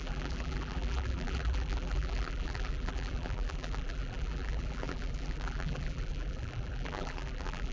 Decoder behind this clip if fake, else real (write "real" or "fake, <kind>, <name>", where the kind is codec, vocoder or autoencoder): fake, vocoder, BigVGAN v2